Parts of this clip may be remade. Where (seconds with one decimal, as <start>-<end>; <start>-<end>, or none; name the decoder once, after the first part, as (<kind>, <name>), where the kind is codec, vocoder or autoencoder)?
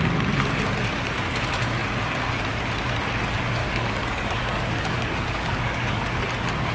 3.6-6.2 (codec, DAC)